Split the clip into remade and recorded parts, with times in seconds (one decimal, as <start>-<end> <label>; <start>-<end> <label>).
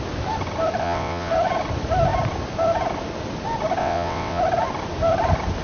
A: 0.0-0.8 recorded; 0.8-1.3 remade; 1.3-3.8 recorded; 3.8-4.4 remade; 4.4-5.6 recorded